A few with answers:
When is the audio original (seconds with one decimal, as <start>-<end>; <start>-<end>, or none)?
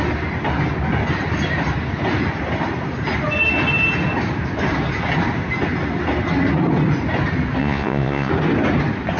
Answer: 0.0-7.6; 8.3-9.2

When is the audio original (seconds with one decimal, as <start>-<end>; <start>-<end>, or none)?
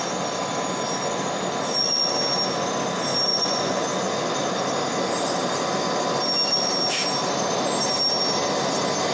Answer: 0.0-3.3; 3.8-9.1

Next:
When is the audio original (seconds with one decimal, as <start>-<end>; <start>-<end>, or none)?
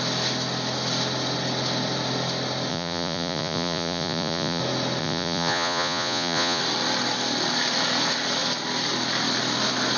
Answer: 0.0-2.7; 4.6-5.0; 6.6-10.0